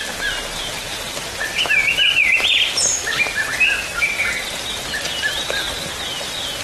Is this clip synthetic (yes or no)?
no